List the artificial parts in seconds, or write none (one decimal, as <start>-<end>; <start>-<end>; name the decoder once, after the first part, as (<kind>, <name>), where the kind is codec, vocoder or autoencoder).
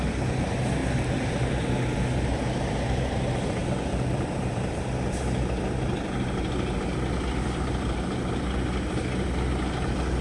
3.6-4.7 (vocoder, BigVGAN v2)